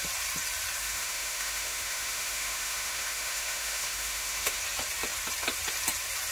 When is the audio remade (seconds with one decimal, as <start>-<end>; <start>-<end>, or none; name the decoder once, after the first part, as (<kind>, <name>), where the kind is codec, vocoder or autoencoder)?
0.8-4.6 (autoencoder, DAC-VAE)